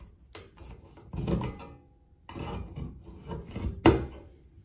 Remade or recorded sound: recorded